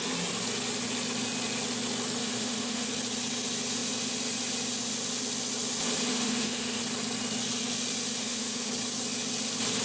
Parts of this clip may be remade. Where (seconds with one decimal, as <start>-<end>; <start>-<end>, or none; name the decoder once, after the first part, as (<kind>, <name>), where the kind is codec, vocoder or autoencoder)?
2.2-2.9 (autoencoder, DAC-VAE); 6.1-6.8; 8.2-8.7